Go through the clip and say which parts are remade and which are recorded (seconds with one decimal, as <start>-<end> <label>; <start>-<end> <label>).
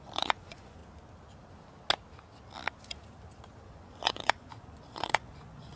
0.0-0.8 remade; 0.8-3.6 recorded; 3.6-5.8 remade